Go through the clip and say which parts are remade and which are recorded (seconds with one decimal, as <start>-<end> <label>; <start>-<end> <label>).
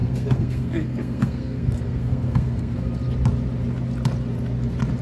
0.0-3.0 remade; 3.0-5.0 recorded